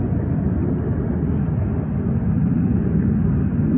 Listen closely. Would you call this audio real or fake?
real